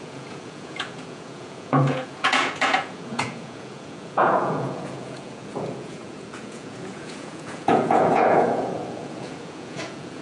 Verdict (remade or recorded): remade